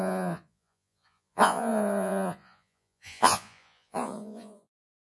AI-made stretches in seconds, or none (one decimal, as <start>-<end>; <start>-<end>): 0.0-5.1